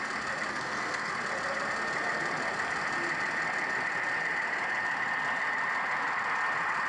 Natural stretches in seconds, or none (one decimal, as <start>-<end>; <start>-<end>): 0.0-0.5; 1.1-6.9